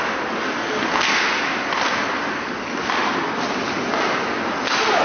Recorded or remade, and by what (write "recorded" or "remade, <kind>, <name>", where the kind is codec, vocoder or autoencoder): recorded